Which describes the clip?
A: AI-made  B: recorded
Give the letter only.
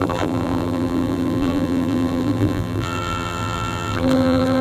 A